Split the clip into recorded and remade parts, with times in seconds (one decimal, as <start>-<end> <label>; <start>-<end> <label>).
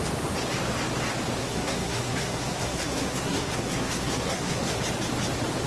0.0-1.4 recorded; 1.4-4.8 remade; 4.8-5.7 recorded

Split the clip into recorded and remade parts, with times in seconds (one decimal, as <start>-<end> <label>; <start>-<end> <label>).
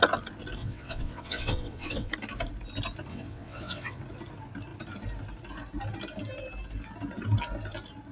0.0-0.6 recorded; 0.6-2.1 remade; 2.1-3.1 recorded; 3.1-4.0 remade; 4.0-8.1 recorded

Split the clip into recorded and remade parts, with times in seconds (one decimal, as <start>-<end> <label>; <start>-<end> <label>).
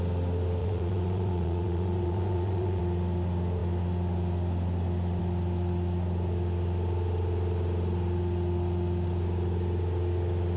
0.0-0.6 recorded; 0.6-2.8 remade; 2.8-10.6 recorded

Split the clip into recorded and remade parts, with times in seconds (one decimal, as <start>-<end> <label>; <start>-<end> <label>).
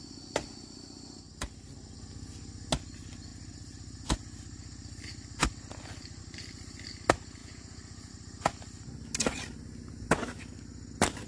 0.0-7.4 recorded; 7.4-8.1 remade; 8.1-11.3 recorded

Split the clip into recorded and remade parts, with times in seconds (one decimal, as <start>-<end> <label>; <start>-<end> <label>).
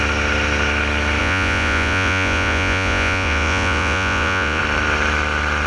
0.0-1.2 recorded; 1.2-4.6 remade; 4.6-5.7 recorded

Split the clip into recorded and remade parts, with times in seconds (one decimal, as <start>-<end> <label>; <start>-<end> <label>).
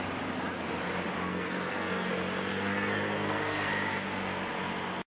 0.0-1.3 recorded; 1.3-2.1 remade; 2.1-2.5 recorded; 2.5-3.7 remade; 3.7-5.1 recorded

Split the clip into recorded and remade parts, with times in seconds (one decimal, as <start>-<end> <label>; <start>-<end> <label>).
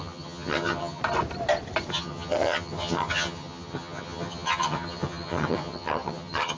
0.0-1.0 remade; 1.0-1.9 recorded; 1.9-6.6 remade